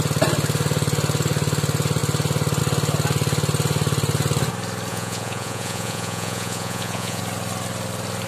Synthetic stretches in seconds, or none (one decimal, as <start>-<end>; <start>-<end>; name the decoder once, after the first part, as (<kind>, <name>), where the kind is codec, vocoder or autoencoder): 4.9-7.2 (vocoder, Vocos)